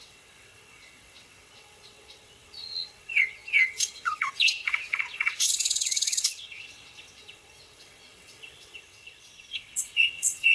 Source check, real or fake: fake